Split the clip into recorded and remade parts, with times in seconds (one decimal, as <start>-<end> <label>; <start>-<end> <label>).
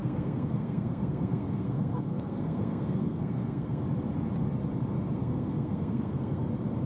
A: 0.0-3.8 remade; 3.8-5.2 recorded; 5.2-6.4 remade; 6.4-6.9 recorded